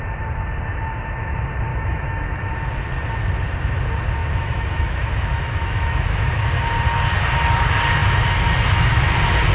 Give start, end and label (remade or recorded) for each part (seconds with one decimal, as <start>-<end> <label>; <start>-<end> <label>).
0.0-1.7 recorded; 1.7-2.5 remade; 2.5-4.2 recorded; 4.2-6.3 remade; 6.3-9.5 recorded